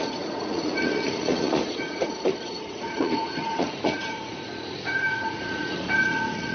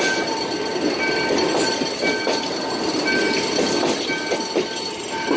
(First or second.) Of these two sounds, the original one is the second